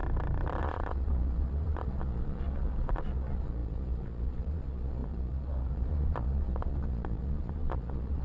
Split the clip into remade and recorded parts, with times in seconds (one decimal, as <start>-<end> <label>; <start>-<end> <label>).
0.0-0.6 recorded; 0.6-8.2 remade